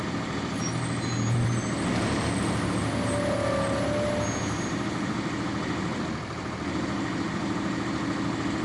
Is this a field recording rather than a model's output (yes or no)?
yes